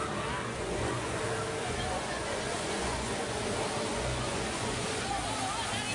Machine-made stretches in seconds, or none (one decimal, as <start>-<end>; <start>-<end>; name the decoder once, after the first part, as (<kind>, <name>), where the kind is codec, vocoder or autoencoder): 0.4-1.2 (vocoder, Vocos); 1.6-3.4; 3.9-5.1